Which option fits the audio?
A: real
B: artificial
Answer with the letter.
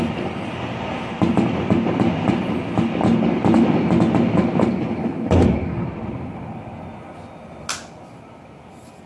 A